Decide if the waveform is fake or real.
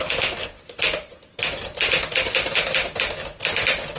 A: real